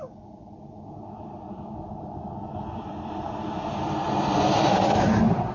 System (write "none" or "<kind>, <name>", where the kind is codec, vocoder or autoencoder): vocoder, BigVGAN v2